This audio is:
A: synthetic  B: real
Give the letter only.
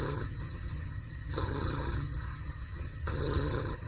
A